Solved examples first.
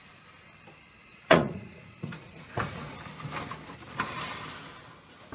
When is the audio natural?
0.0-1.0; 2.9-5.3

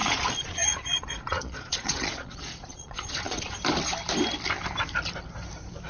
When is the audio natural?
3.5-5.9

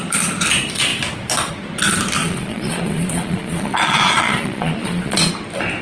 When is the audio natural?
0.0-2.2; 5.3-5.8

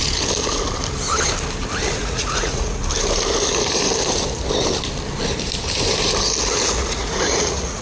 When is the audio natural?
0.0-2.0; 2.8-6.8

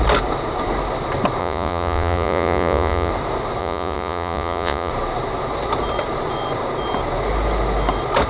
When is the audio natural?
0.0-1.4; 3.1-3.6; 4.9-8.3

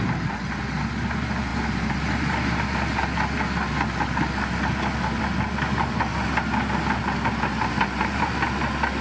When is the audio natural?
0.0-9.0

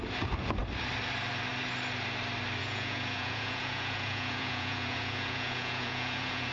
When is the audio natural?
0.0-2.6